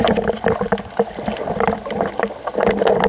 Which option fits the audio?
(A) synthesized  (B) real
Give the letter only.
B